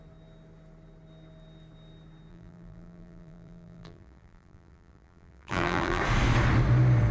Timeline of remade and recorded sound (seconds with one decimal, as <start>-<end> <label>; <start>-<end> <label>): 0.0-2.3 recorded; 2.3-6.0 remade; 6.0-7.1 recorded